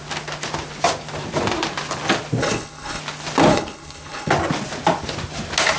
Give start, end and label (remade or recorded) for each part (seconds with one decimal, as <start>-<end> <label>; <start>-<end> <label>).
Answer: 0.0-2.4 recorded; 2.4-3.0 remade; 3.0-3.5 recorded; 3.5-4.3 remade; 4.3-5.8 recorded